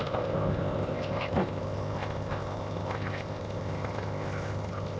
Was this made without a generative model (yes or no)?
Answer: no